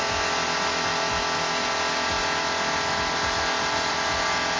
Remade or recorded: recorded